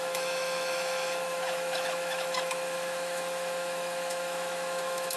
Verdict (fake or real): fake